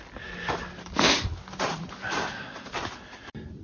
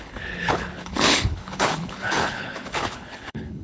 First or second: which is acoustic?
first